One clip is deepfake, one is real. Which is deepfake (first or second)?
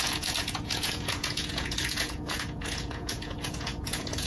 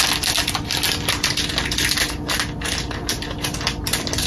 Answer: first